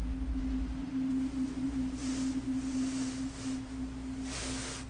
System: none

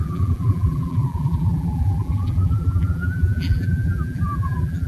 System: vocoder, BigVGAN v2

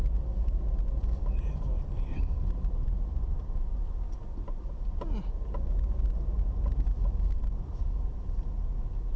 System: none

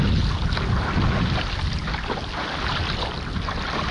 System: none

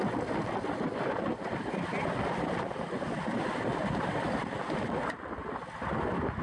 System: none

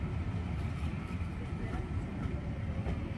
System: none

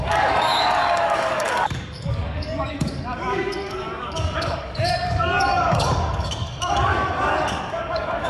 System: codec, DAC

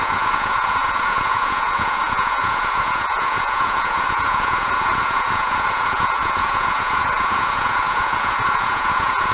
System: vocoder, Vocos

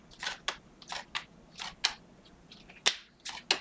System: none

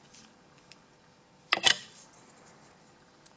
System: none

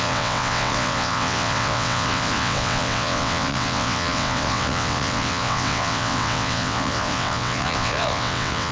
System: vocoder, WaveNeXt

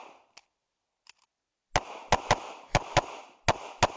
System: none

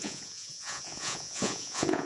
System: vocoder, Vocos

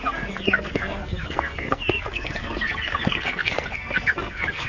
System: codec, SNAC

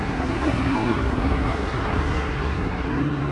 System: codec, SNAC